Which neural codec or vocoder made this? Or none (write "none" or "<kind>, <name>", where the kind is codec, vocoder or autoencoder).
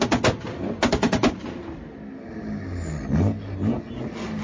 none